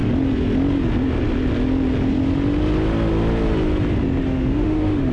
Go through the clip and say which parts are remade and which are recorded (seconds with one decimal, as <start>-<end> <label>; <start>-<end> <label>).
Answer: 0.0-4.2 recorded; 4.2-5.1 remade